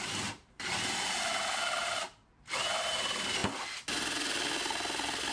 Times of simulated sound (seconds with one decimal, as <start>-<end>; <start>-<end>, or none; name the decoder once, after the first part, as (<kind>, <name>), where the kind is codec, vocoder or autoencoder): 0.0-3.4 (vocoder, BigVGAN v2)